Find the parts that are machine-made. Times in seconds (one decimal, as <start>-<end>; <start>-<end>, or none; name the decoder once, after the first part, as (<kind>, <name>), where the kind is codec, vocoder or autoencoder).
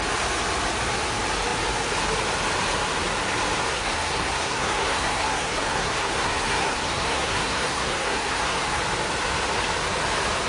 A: 3.7-8.8 (codec, SNAC)